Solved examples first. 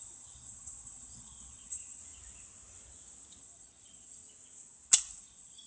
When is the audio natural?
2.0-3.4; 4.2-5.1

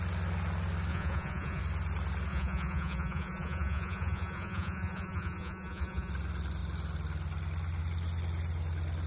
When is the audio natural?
0.0-0.9; 1.6-2.3; 6.1-9.1

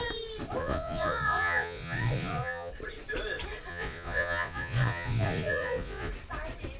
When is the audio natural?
0.0-0.6; 2.7-3.7; 6.1-6.8

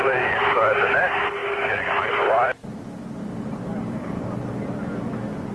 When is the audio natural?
0.0-5.5

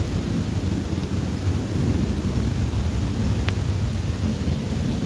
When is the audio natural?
0.0-5.1

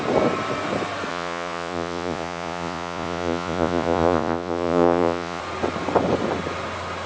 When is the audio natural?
0.0-1.1; 5.4-7.1

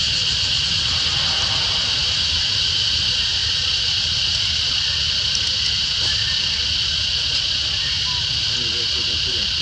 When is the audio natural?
0.0-9.6

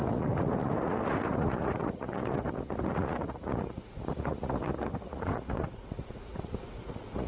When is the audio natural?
none